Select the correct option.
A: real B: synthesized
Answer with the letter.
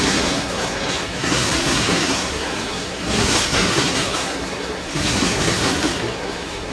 B